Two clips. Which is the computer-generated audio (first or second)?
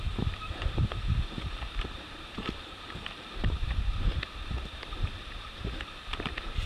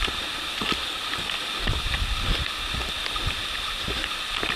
first